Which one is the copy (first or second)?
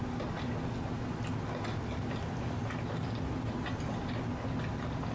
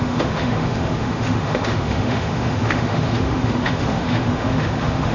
second